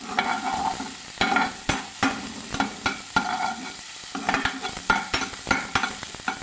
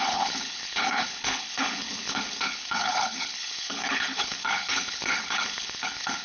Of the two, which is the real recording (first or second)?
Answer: first